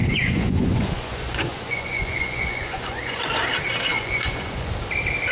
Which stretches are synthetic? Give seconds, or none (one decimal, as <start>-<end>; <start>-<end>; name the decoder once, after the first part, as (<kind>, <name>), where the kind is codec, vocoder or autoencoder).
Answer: 0.0-3.2 (vocoder, Vocos); 3.9-4.7